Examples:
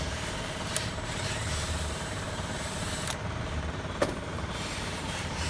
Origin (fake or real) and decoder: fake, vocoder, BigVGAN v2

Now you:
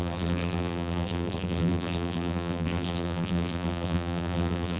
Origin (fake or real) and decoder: fake, vocoder, BigVGAN v2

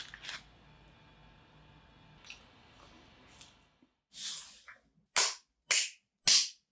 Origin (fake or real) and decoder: real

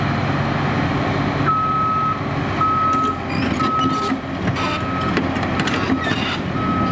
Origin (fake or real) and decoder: real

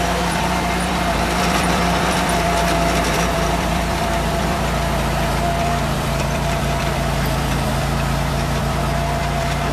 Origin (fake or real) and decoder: fake, vocoder, BigVGAN v2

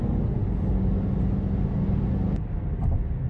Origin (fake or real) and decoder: real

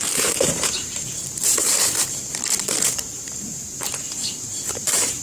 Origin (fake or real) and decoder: fake, vocoder, BigVGAN v2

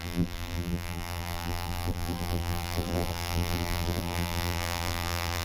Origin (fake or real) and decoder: fake, vocoder, BigVGAN v2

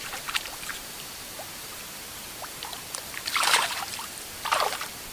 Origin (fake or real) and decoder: fake, vocoder, BigVGAN v2